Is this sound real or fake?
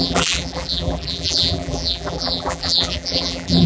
fake